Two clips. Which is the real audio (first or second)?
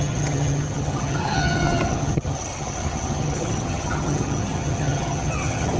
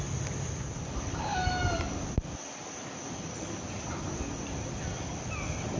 second